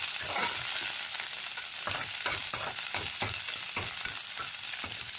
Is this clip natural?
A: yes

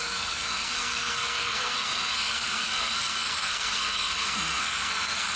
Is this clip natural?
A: no